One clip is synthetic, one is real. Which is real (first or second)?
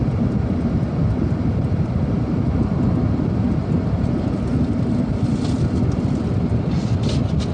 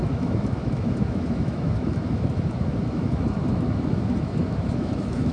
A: first